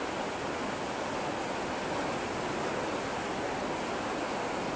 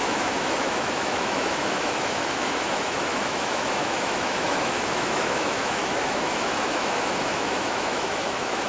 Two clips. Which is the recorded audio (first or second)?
first